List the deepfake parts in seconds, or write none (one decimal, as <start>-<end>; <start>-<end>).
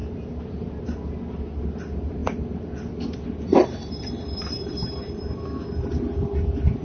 2.2-5.2